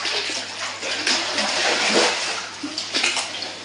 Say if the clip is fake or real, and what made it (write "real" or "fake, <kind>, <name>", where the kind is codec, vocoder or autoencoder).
real